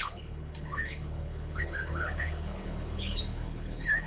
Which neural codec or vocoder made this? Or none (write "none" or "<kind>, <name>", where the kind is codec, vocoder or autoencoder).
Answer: codec, HILCodec